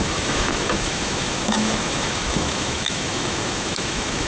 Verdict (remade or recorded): remade